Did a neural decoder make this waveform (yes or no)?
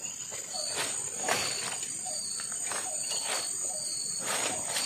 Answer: no